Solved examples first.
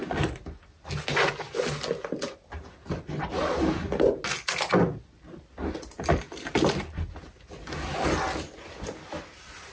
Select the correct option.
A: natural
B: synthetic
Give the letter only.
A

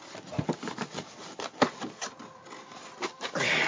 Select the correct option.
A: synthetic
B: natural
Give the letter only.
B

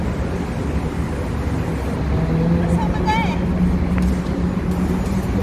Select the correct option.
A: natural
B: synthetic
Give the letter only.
A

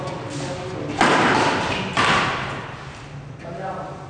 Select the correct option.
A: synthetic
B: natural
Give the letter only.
B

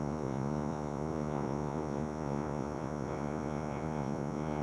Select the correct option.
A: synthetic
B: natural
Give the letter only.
A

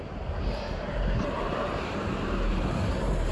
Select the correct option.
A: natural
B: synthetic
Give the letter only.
B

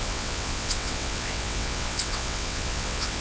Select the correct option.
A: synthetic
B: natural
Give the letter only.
A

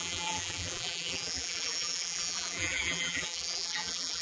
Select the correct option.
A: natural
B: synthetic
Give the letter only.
B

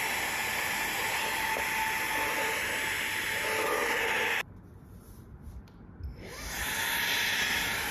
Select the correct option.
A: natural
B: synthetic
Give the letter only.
A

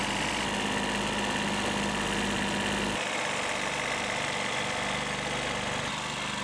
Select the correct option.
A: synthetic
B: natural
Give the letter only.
B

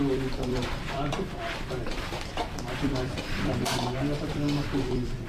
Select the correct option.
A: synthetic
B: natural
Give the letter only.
A